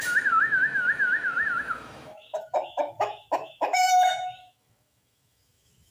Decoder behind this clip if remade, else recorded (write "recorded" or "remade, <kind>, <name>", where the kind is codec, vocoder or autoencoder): remade, autoencoder, DAC-VAE